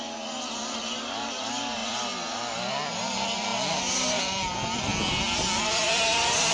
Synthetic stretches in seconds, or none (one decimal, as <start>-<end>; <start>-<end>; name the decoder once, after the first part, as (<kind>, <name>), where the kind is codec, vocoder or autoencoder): 0.0-3.5 (vocoder, BigVGAN v2); 4.2-4.9; 5.6-6.5